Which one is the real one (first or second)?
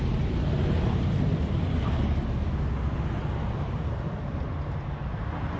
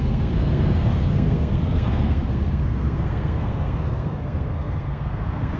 first